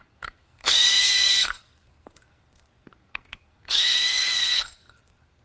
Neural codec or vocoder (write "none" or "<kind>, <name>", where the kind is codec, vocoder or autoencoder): codec, SNAC